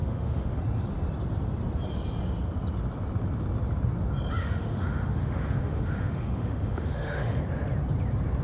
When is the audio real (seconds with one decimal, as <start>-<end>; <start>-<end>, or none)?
0.6-4.4; 7.4-8.4